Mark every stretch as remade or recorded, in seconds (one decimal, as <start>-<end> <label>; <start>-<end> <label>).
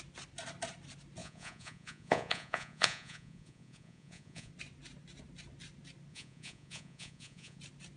0.0-1.2 recorded; 1.2-4.5 remade; 4.5-6.1 recorded; 6.1-7.6 remade; 7.6-8.0 recorded